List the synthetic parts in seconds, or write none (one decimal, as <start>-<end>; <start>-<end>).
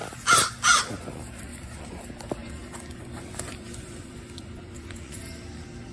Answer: 1.5-2.0; 2.4-5.2